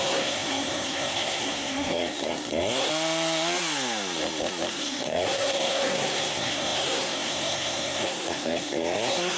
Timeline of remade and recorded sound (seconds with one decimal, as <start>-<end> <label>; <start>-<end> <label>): 0.0-2.9 remade; 2.9-4.7 recorded; 4.7-9.4 remade